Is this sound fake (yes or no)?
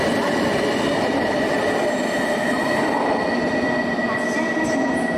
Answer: no